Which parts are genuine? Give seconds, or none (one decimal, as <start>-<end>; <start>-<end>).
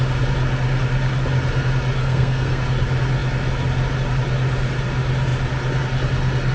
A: 0.0-2.0; 2.6-6.5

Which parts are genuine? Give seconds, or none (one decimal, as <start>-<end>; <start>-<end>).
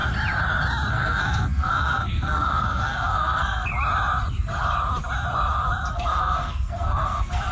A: 0.0-0.9; 3.7-5.9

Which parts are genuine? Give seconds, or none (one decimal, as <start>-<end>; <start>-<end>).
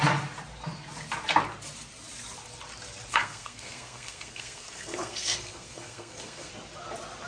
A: 0.0-3.1; 6.5-7.3